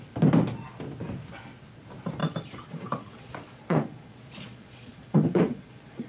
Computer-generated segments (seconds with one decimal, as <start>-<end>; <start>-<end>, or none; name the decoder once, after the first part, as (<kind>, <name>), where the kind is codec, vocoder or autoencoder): 2.2-6.1 (vocoder, Vocos)

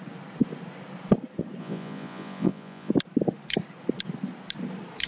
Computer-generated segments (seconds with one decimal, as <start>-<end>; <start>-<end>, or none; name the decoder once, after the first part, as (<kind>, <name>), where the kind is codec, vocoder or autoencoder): 1.6-2.9 (vocoder, Vocos)

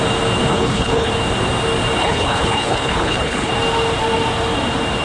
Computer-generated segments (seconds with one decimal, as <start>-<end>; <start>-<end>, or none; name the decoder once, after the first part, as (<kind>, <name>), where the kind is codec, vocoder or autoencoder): 0.5-1.1 (codec, HILCodec); 2.0-3.5

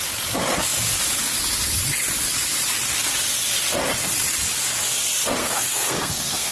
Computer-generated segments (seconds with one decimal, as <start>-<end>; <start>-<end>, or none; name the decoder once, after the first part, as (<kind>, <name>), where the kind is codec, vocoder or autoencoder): 5.4-6.5 (codec, SNAC)

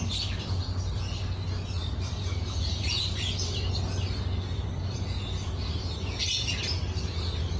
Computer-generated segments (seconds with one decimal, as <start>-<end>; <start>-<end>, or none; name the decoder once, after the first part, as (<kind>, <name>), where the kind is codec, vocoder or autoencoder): 1.8-3.6 (vocoder, BigVGAN v2); 4.5-5.0

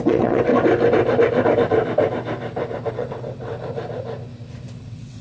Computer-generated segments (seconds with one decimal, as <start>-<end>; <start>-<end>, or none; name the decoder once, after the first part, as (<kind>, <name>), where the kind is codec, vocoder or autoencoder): 0.0-0.5 (vocoder, WaveNeXt); 2.9-3.5; 4.8-5.2

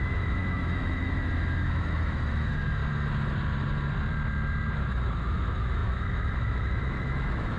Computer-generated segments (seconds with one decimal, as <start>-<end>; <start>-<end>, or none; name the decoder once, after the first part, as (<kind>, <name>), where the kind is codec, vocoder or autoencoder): 0.0-2.8 (autoencoder, DAC-VAE); 4.7-7.6

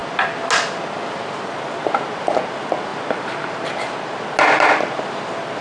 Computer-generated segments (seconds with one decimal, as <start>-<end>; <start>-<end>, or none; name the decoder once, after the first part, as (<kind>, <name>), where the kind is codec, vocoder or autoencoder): none